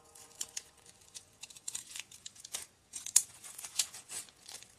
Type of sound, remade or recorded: remade